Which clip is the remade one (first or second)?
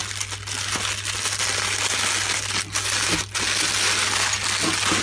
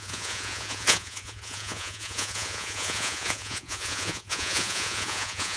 second